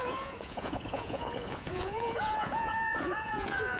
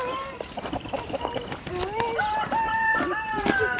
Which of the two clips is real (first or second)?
second